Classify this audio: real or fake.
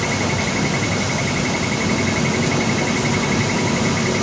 real